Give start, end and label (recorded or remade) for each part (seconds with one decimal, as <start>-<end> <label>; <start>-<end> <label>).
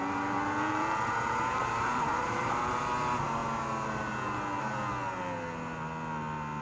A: 0.0-0.7 recorded; 0.7-2.7 remade; 2.7-6.6 recorded